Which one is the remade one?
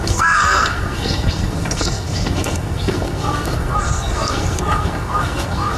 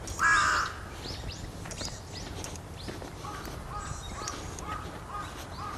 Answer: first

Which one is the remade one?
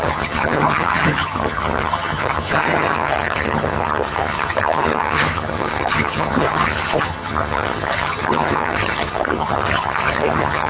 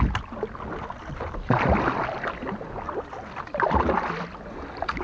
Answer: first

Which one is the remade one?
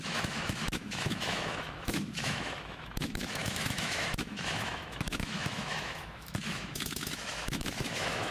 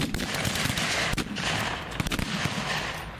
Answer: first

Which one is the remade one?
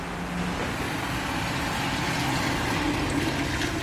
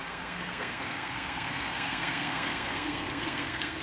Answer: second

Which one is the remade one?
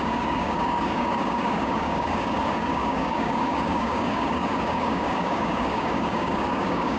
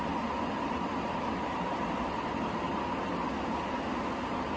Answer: first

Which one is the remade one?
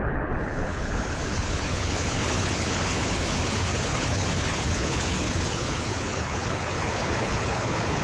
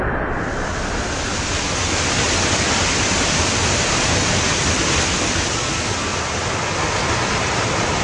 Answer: first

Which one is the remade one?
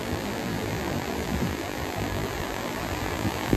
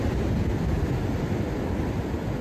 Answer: first